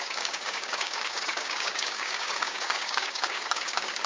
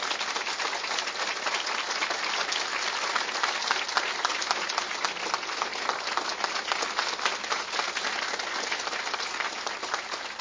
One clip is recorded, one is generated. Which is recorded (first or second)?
second